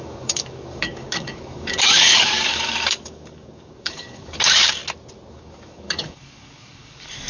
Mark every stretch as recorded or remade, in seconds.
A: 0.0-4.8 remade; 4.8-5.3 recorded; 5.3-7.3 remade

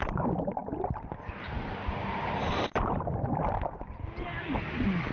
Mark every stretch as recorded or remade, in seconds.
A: 0.0-5.1 recorded

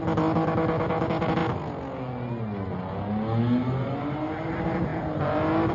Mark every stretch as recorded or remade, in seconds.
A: 0.0-5.7 recorded

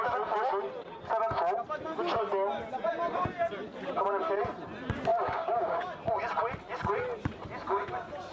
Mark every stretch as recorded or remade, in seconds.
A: 0.0-5.1 recorded; 5.1-5.9 remade; 5.9-8.3 recorded

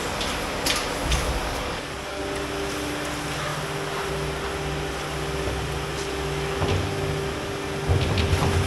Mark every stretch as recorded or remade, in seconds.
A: 0.0-1.0 recorded; 1.0-2.2 remade; 2.2-8.7 recorded

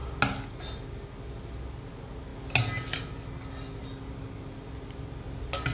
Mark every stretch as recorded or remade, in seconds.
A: 0.0-5.7 recorded

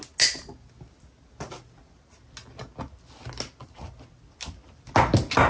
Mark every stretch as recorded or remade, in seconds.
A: 0.0-5.5 recorded